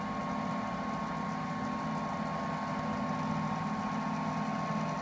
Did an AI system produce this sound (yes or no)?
no